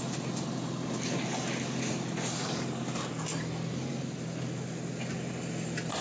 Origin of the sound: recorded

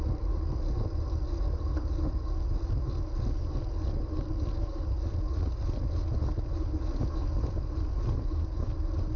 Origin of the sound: recorded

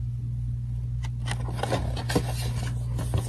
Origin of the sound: recorded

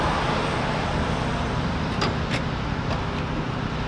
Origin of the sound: recorded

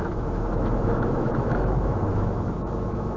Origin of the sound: remade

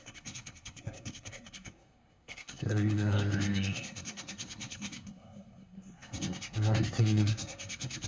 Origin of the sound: remade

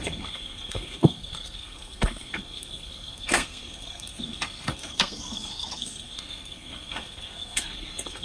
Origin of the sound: remade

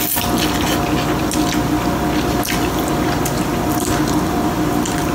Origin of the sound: recorded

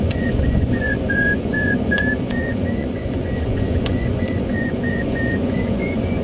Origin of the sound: remade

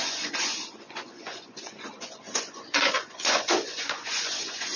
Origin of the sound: remade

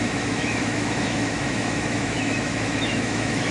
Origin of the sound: remade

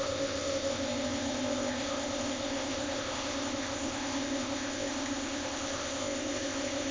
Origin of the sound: remade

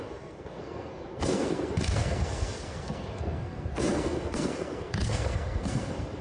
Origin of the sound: remade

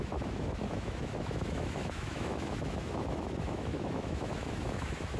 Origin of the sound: remade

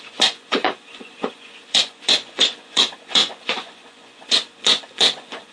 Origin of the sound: remade